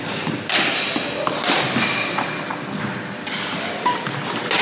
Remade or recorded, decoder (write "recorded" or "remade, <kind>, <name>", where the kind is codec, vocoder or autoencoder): recorded